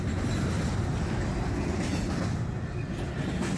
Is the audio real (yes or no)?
yes